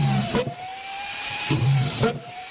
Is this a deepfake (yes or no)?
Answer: yes